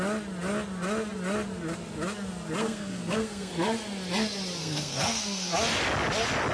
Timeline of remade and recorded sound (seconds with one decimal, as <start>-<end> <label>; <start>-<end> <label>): 0.0-2.6 recorded; 2.6-3.5 remade; 3.5-4.6 recorded; 4.6-5.5 remade; 5.5-6.5 recorded